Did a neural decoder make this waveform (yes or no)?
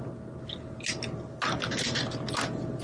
no